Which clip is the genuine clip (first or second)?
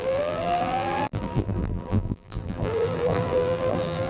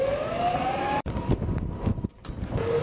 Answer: second